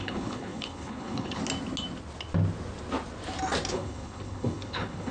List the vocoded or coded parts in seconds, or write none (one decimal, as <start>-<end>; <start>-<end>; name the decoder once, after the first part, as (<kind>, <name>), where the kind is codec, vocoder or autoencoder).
0.0-1.4 (codec, HILCodec); 3.7-5.1